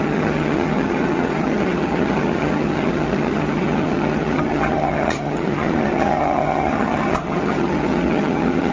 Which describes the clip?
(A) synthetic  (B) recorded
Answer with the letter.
A